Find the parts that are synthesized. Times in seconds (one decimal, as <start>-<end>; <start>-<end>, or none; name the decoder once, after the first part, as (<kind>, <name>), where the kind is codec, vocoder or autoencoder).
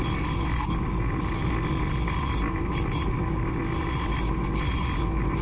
none